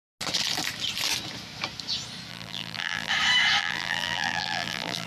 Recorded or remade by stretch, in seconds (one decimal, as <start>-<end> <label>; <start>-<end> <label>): 0.0-2.3 recorded; 2.3-3.1 remade; 3.1-3.6 recorded; 3.6-5.1 remade